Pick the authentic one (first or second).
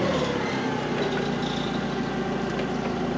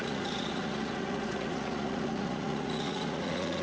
first